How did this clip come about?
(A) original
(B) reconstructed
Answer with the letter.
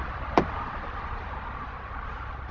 A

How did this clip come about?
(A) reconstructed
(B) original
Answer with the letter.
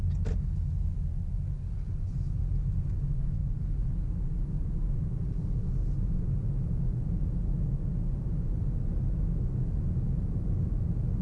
B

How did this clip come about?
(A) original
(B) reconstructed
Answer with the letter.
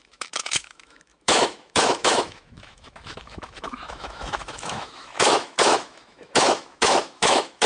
B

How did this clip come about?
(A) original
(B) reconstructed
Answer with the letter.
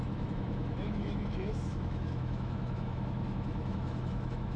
B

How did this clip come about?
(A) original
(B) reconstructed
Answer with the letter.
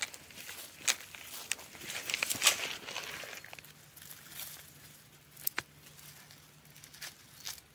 A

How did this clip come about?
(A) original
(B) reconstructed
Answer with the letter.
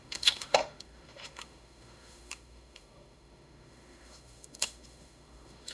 B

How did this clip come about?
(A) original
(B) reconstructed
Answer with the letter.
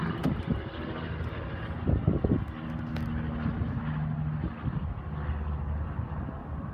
A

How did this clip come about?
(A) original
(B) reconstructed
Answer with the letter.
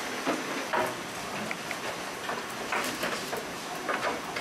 A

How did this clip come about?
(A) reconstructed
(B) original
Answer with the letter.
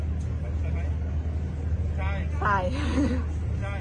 B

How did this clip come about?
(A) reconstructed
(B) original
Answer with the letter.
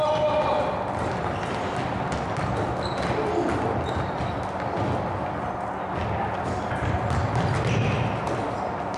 B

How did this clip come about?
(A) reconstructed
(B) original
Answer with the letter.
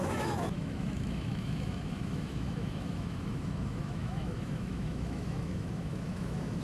A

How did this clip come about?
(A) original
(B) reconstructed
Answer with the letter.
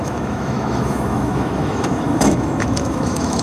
B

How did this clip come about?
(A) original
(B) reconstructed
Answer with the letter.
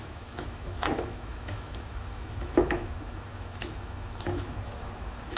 B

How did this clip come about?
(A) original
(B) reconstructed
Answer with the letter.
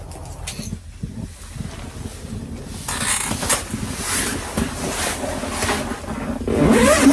A